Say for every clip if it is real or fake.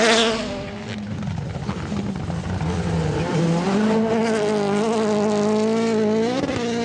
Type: real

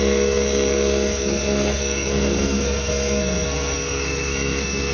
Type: fake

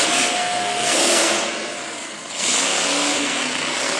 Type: fake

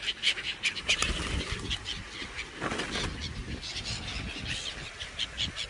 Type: real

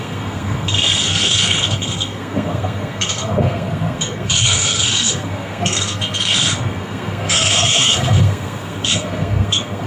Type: fake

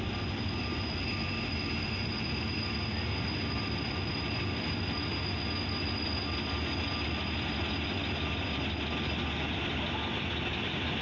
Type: real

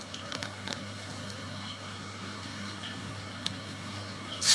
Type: fake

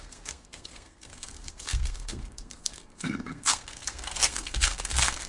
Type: fake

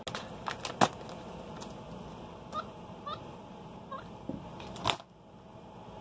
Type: real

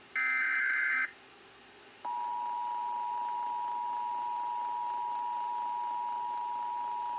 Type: real